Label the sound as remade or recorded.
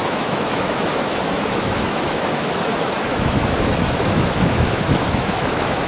remade